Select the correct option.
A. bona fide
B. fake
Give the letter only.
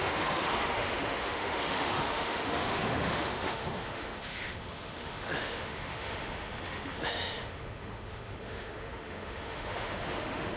B